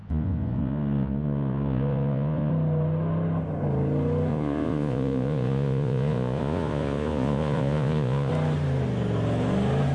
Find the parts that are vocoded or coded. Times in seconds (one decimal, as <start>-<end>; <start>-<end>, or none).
0.0-2.5; 4.3-8.3